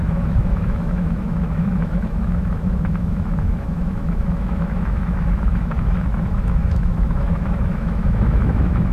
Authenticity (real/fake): fake